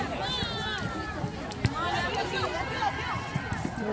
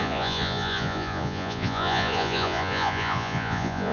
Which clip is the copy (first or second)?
second